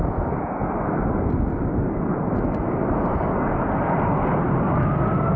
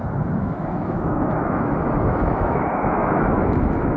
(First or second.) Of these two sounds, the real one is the first